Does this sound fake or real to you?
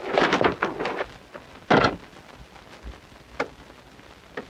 real